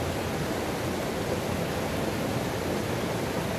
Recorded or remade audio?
recorded